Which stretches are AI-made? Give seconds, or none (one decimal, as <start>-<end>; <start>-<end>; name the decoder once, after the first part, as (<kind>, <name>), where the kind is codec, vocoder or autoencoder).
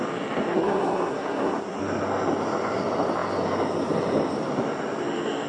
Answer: 0.5-1.8 (codec, SNAC)